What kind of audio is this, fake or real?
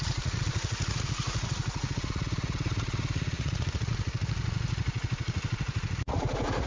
fake